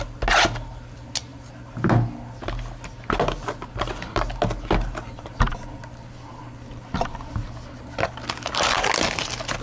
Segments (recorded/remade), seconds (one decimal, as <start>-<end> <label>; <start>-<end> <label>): 0.0-9.6 recorded